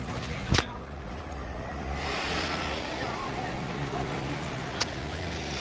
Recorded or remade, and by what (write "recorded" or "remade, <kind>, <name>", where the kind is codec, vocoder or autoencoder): remade, vocoder, Vocos